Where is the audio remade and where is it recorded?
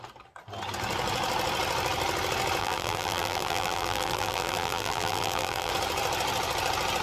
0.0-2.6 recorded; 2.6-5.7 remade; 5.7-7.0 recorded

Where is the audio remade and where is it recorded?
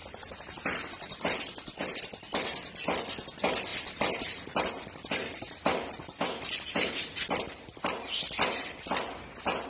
0.0-2.0 remade; 2.0-3.7 recorded; 3.7-8.8 remade; 8.8-9.7 recorded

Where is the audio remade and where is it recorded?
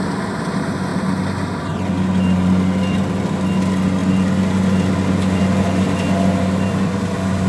0.0-7.5 recorded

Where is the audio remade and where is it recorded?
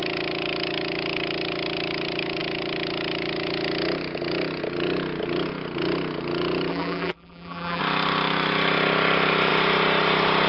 0.0-6.7 recorded; 6.7-7.8 remade; 7.8-10.5 recorded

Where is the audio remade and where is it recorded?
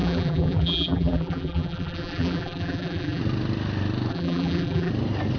0.0-3.2 remade; 3.2-4.1 recorded; 4.1-4.9 remade; 4.9-5.4 recorded